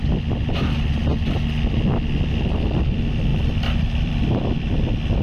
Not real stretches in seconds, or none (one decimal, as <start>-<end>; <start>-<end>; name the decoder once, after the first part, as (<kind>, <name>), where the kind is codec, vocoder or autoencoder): 3.3-4.8 (vocoder, BigVGAN v2)